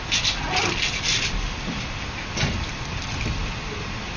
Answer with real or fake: real